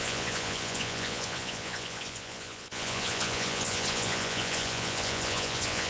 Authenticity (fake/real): fake